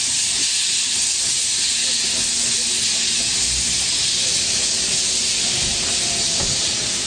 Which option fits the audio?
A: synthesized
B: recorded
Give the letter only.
B